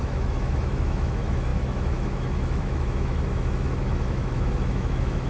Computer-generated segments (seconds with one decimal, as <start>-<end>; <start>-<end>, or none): 0.0-5.3